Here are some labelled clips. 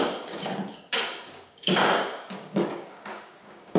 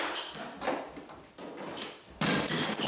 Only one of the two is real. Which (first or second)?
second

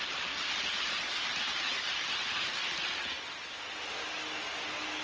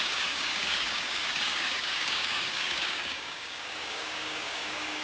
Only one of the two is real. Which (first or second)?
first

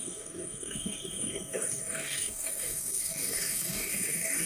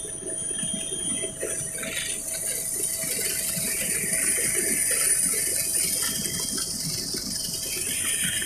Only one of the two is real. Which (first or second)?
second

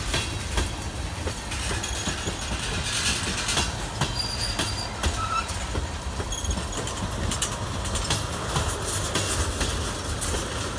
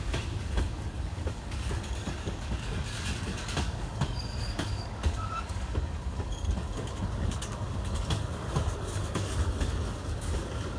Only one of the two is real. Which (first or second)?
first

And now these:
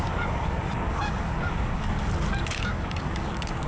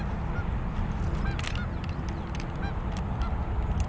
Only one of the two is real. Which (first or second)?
second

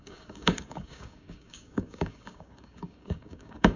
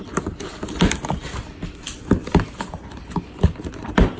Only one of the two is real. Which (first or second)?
second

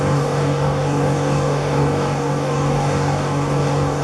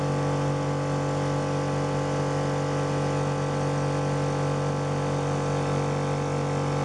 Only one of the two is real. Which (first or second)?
second